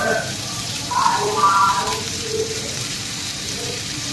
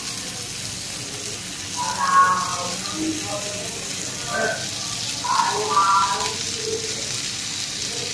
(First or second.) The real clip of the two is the second